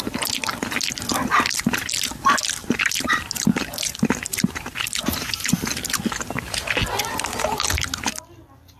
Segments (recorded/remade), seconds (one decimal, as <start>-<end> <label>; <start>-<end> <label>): 0.0-8.8 recorded